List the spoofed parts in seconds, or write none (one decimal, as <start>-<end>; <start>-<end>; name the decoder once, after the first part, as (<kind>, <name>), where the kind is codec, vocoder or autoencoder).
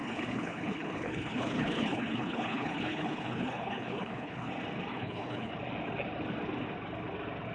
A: 0.0-4.5 (codec, HILCodec); 4.9-5.5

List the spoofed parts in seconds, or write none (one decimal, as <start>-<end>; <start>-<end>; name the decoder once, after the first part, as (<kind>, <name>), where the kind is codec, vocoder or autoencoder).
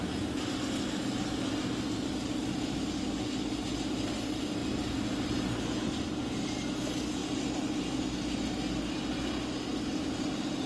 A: none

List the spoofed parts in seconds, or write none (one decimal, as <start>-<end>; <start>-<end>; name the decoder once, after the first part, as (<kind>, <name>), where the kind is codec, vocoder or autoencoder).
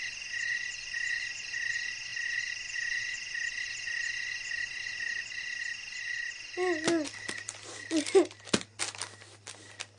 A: none